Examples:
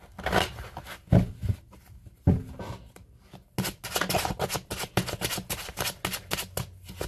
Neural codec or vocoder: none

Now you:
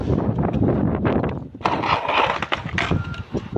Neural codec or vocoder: none